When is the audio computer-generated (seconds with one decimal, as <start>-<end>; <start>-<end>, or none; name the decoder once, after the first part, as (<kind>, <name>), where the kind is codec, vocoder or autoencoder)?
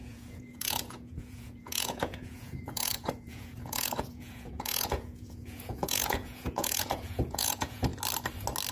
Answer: 0.0-7.9 (vocoder, Vocos)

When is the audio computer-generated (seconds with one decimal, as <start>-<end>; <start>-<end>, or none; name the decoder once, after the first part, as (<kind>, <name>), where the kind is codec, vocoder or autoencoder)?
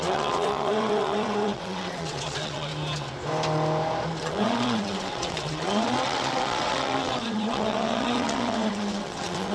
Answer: 0.0-2.7 (vocoder, WaveNeXt); 4.2-9.5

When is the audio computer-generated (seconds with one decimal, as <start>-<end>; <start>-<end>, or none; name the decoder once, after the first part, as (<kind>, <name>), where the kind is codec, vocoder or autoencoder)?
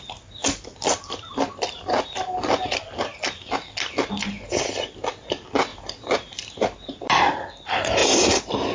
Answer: 0.7-1.2 (vocoder, BigVGAN v2); 5.7-6.5; 8.0-8.7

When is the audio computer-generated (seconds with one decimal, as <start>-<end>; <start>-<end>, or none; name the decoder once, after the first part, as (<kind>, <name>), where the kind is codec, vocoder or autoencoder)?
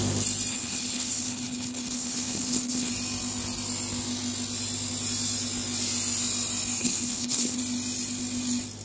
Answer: 0.5-2.9 (codec, HILCodec); 6.8-7.6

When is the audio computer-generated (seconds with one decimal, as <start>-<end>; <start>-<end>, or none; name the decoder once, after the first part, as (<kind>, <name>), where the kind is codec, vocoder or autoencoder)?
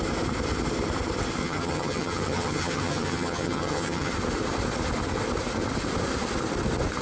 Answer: 1.4-4.1 (vocoder, HiFi-GAN)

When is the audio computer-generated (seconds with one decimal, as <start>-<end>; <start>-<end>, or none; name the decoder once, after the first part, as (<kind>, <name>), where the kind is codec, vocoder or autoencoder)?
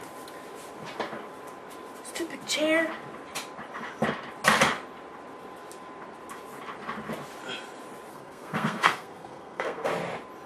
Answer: 8.1-9.9 (codec, SNAC)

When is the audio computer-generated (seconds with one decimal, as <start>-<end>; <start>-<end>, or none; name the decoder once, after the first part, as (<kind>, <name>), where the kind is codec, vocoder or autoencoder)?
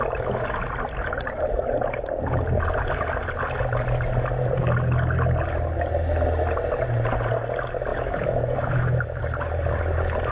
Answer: 7.9-9.2 (autoencoder, DAC-VAE)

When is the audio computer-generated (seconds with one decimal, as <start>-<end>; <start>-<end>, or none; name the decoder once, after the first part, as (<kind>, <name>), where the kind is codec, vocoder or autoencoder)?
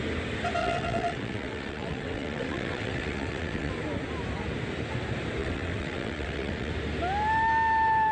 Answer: 0.6-3.7 (vocoder, WaveNeXt); 5.4-6.7